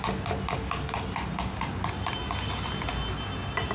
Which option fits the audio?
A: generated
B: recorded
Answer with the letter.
B